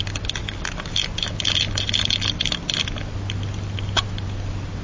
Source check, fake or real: real